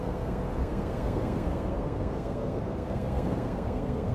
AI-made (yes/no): yes